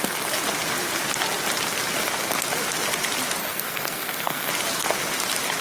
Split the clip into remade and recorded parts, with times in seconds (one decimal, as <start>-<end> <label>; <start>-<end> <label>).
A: 0.0-3.4 recorded; 3.4-4.5 remade; 4.5-5.6 recorded